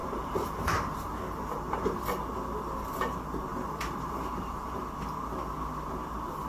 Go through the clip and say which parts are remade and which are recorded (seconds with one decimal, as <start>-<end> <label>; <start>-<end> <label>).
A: 0.0-2.1 remade; 2.1-3.5 recorded; 3.5-4.8 remade; 4.8-6.5 recorded